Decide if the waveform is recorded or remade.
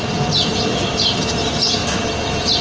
recorded